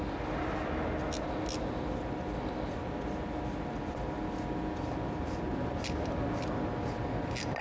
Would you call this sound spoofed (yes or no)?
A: no